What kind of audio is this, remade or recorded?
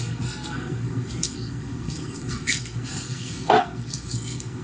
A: remade